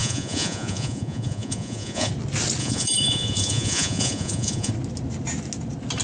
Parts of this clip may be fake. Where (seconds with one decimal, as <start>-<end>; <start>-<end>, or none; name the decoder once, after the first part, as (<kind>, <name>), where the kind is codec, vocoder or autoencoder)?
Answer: 0.0-2.1 (vocoder, Vocos); 2.6-4.7

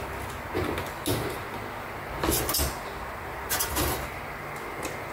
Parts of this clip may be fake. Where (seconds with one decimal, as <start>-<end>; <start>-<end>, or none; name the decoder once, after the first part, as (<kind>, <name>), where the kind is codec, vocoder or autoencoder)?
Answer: none

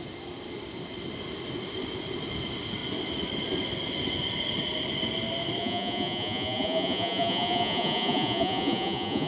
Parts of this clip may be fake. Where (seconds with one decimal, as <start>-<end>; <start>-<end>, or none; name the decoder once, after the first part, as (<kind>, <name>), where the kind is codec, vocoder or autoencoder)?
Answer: 5.6-9.3 (vocoder, Vocos)

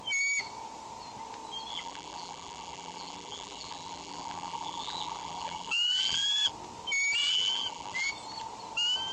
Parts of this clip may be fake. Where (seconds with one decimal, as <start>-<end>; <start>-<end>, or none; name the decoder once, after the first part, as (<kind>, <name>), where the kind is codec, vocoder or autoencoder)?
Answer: 1.7-6.5 (vocoder, BigVGAN v2); 7.2-8.1